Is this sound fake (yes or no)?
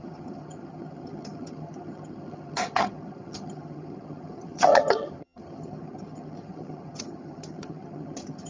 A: yes